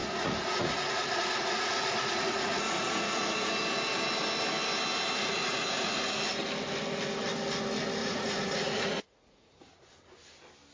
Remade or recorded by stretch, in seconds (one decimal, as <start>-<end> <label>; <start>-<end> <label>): 0.0-3.5 remade; 3.5-5.2 recorded; 5.2-6.1 remade; 6.1-8.0 recorded; 8.0-9.9 remade; 9.9-10.7 recorded